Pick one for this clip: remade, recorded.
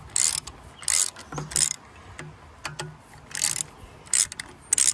recorded